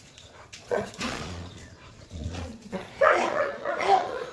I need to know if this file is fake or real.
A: fake